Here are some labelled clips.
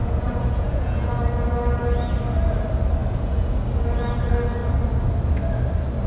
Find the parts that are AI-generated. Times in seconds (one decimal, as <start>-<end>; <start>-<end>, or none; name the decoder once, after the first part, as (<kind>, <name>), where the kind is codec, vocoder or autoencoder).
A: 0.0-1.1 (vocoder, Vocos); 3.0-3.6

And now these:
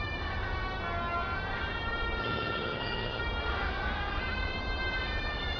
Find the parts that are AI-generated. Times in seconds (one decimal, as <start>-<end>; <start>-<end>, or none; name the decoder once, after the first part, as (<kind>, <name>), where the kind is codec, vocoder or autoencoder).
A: 2.2-3.2 (vocoder, HiFi-GAN)

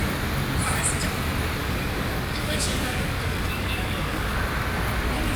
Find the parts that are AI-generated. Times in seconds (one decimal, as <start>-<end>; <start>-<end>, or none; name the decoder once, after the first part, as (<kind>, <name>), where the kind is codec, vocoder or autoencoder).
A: 1.6-4.4 (codec, DAC)